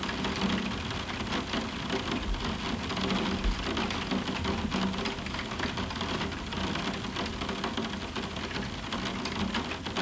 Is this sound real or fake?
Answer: real